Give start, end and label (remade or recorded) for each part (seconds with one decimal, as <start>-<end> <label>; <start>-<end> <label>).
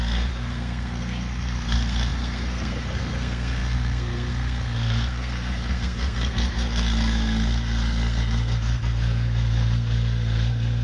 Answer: 0.0-10.8 remade